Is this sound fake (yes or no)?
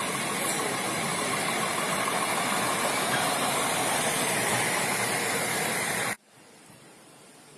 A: yes